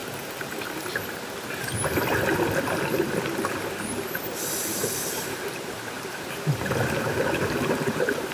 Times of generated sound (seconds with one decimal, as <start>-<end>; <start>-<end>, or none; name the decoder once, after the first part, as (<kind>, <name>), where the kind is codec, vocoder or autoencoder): 5.0-8.3 (vocoder, BigVGAN v2)